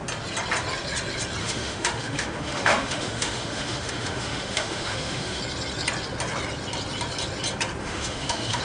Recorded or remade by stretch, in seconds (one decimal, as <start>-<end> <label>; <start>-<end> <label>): 0.0-1.4 recorded; 1.4-5.4 remade; 5.4-7.8 recorded; 7.8-8.6 remade